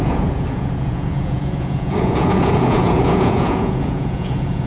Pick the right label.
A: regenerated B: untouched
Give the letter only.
A